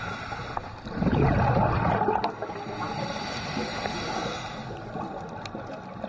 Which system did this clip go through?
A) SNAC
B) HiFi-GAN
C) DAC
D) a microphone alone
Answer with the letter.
D